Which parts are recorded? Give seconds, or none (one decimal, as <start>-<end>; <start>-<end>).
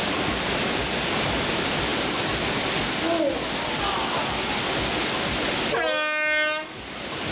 0.0-7.3